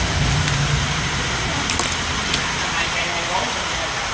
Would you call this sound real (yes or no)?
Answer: yes